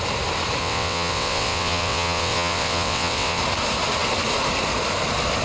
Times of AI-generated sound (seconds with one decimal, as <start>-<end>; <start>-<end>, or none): 0.6-3.4